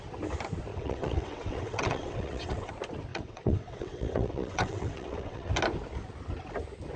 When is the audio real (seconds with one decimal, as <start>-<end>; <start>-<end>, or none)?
0.0-0.7; 2.7-3.1; 5.5-7.0